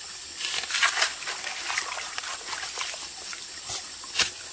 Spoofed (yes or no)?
no